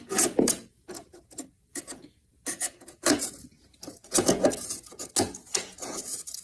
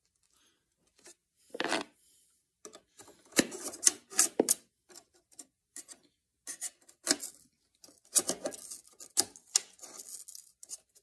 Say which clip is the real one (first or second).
second